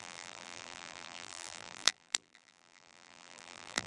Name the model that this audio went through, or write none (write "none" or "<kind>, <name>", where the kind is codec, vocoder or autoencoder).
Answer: vocoder, BigVGAN v2